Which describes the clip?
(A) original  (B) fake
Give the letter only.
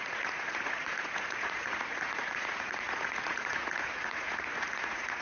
B